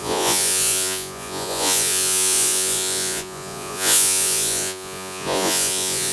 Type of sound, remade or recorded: remade